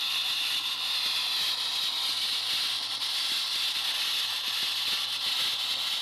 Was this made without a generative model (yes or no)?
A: yes